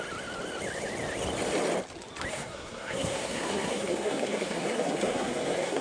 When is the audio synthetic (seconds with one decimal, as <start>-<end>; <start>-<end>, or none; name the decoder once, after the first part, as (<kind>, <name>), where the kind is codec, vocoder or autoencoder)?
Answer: 2.3-5.8 (codec, SNAC)